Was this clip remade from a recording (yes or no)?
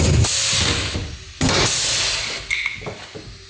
no